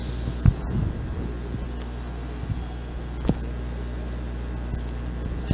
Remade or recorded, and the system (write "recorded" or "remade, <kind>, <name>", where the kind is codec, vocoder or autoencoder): recorded